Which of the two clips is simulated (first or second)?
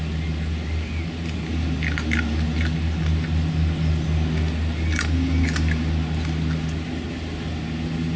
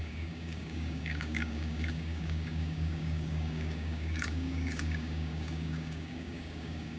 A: second